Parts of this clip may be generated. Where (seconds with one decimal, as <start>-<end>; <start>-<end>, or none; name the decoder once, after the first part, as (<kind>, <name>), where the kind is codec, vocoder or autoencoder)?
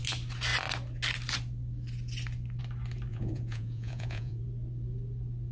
3.1-4.4 (vocoder, Vocos)